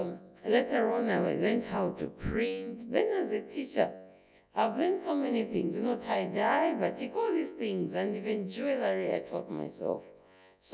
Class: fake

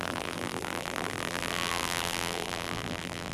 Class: fake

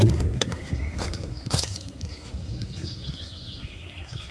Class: fake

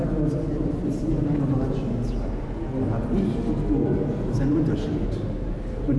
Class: real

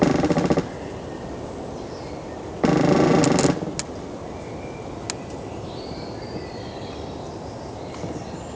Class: real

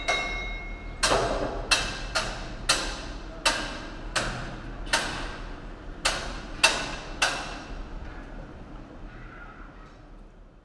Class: real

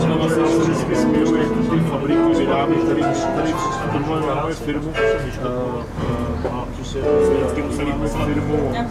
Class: real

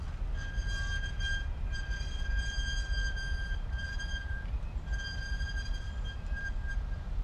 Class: fake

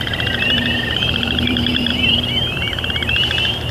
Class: fake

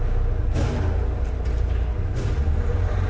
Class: real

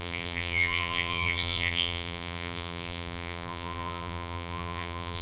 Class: fake